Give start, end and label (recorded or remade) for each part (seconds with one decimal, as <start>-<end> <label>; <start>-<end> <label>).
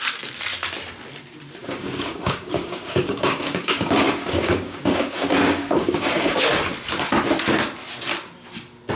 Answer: 0.0-1.6 recorded; 1.6-6.5 remade; 6.5-9.0 recorded